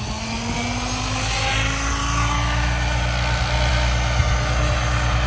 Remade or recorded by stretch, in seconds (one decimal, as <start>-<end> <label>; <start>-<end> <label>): 0.0-5.3 recorded